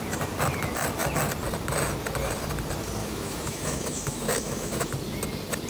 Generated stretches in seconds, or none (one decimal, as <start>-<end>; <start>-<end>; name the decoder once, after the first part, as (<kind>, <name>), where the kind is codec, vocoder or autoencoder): 3.0-4.9 (autoencoder, DAC-VAE)